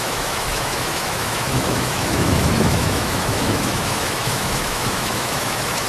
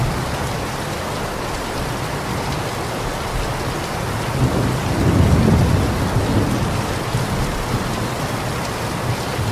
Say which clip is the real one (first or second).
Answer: second